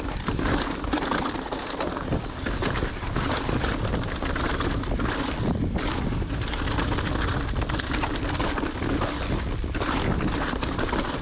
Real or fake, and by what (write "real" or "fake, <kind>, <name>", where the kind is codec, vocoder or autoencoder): real